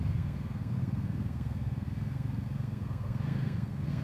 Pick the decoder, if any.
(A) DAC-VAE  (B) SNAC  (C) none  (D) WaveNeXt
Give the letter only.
B